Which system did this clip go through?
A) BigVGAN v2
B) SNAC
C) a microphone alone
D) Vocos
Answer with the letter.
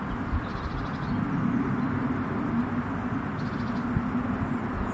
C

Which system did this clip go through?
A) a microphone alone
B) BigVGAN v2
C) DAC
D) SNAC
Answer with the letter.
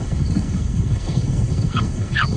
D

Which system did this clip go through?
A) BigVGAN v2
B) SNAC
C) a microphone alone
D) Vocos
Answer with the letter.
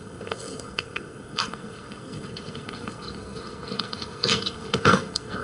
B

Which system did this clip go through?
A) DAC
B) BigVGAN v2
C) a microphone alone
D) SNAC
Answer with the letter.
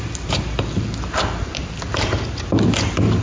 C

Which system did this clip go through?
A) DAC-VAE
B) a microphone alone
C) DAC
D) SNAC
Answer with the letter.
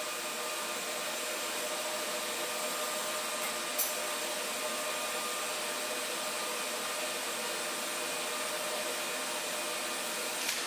B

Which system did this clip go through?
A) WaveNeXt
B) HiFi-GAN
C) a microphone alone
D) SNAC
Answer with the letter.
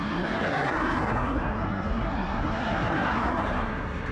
D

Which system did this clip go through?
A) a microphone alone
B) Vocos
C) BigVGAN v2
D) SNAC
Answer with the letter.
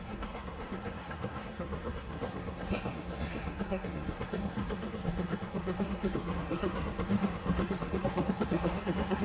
D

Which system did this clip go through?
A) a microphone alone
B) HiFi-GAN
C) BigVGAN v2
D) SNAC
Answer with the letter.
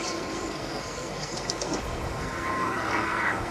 D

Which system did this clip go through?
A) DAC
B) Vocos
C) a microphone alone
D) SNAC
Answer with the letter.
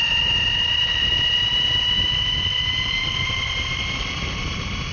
C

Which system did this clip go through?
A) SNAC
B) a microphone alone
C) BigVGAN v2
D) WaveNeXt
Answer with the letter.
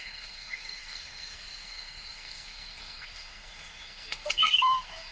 A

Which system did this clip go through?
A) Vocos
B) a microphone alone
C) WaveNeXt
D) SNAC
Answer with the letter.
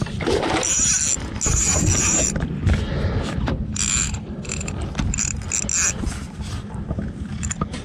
B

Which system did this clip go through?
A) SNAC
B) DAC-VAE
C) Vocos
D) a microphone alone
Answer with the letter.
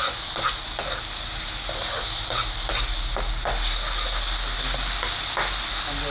D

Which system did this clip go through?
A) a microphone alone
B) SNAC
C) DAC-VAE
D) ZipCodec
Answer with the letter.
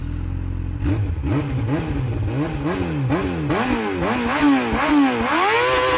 A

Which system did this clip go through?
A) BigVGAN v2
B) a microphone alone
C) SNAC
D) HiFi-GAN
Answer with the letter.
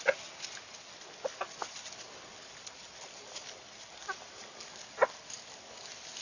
B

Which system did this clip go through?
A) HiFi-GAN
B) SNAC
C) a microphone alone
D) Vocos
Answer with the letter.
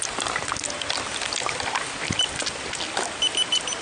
C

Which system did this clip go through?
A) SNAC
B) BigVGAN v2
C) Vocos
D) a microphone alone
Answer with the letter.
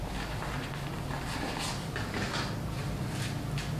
D